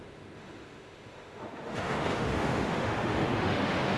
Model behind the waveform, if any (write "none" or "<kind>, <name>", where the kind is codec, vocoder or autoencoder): autoencoder, DAC-VAE